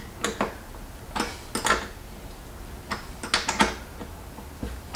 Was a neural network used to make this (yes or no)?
no